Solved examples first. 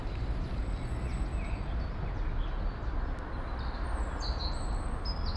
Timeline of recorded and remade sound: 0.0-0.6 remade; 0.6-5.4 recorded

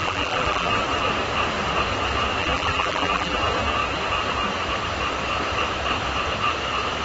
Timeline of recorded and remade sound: 0.0-0.7 remade; 0.7-2.4 recorded; 2.4-3.4 remade; 3.4-7.0 recorded